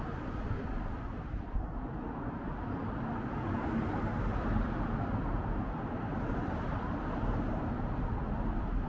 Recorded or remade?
recorded